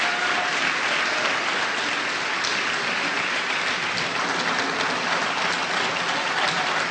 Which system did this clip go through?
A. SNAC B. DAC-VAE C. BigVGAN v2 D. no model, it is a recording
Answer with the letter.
D